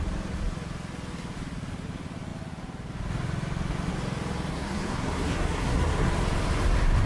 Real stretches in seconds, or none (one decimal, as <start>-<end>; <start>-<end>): 0.0-4.5; 6.1-7.1